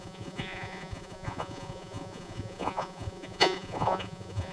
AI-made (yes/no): yes